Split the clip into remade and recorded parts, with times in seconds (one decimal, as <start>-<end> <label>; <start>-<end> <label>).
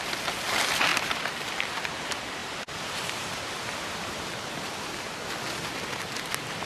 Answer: 0.0-0.9 recorded; 0.9-1.8 remade; 1.8-2.4 recorded; 2.4-4.9 remade; 4.9-6.7 recorded